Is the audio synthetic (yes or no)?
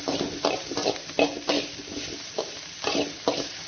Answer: no